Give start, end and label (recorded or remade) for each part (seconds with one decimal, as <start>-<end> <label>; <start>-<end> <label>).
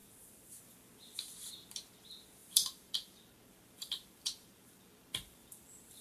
0.0-0.6 remade; 0.6-2.4 recorded; 2.4-6.0 remade